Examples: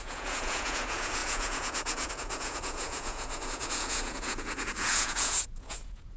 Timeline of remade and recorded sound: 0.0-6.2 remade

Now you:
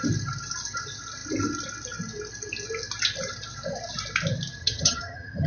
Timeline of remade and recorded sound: 0.0-4.6 recorded; 4.6-5.5 remade

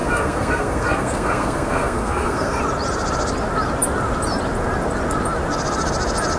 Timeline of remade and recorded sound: 0.0-2.6 remade; 2.6-6.4 recorded

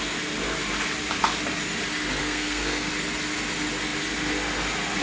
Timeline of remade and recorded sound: 0.0-2.2 recorded; 2.2-2.9 remade; 2.9-5.0 recorded

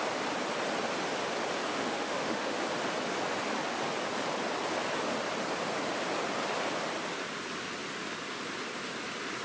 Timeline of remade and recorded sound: 0.0-1.7 recorded; 1.7-2.6 remade; 2.6-9.4 recorded

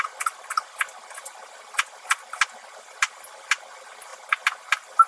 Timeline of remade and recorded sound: 0.0-5.1 recorded

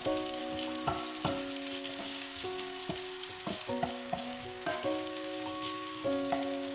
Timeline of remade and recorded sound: 0.0-0.4 remade; 0.4-2.0 recorded; 2.0-2.8 remade; 2.8-3.9 recorded; 3.9-6.7 remade